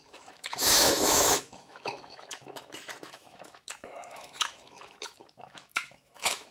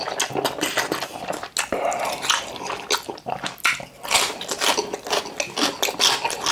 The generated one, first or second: first